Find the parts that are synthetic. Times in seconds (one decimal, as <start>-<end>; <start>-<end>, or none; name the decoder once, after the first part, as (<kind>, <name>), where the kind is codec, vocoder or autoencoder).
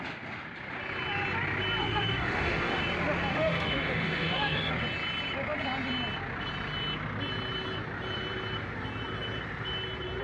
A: 1.8-2.8 (autoencoder, DAC-VAE); 3.3-4.7